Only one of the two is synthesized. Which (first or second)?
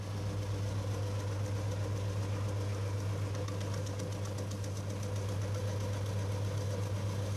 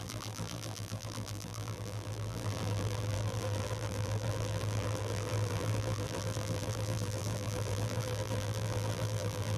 second